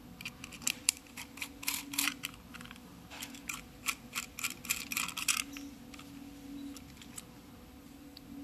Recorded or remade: remade